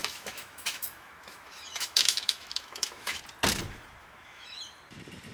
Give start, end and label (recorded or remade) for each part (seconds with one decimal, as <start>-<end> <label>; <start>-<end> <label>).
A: 0.0-3.2 remade; 3.2-4.0 recorded; 4.0-4.6 remade; 4.6-5.3 recorded